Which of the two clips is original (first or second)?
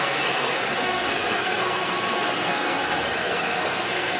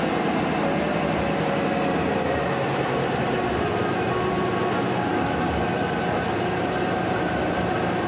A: second